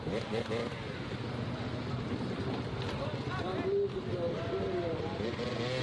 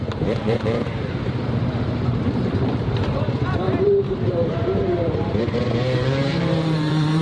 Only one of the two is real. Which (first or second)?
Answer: first